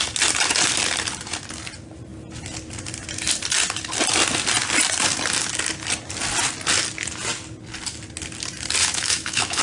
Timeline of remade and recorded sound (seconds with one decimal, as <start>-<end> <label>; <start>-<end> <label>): 0.0-8.8 recorded; 8.8-9.6 remade